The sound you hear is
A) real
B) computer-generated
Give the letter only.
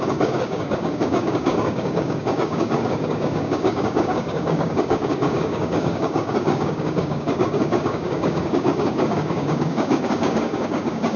B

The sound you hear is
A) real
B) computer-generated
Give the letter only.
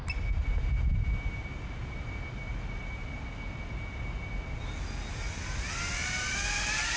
A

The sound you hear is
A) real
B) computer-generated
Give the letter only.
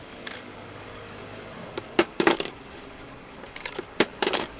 B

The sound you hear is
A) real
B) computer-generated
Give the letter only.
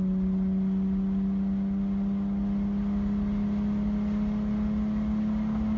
A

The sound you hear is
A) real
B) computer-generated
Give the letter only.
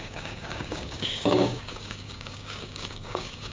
B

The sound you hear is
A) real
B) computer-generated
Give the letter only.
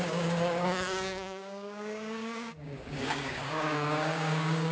B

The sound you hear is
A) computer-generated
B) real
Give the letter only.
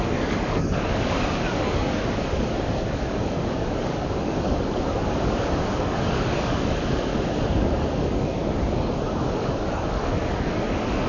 A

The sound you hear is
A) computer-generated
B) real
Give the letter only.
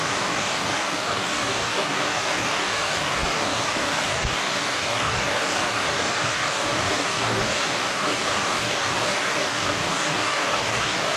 A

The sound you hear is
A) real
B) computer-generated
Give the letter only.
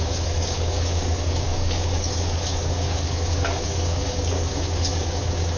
B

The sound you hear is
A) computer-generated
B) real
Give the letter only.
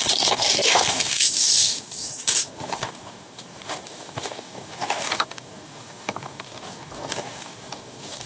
A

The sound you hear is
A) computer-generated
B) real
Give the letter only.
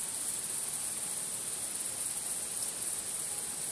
B